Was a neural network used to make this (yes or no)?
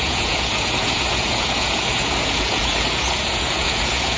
yes